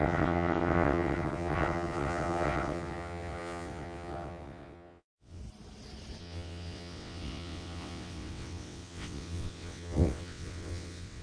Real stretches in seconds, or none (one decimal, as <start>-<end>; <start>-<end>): 5.4-6.2